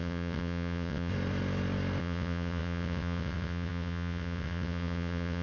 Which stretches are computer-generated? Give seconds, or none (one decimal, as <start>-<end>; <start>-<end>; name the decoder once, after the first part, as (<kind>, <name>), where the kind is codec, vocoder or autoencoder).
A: 0.0-1.1 (vocoder, WaveNeXt); 2.0-5.4